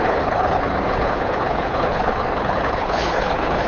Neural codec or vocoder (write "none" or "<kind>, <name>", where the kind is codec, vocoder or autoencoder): codec, HILCodec